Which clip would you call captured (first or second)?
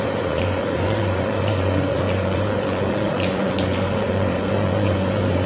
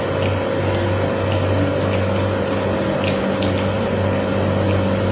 second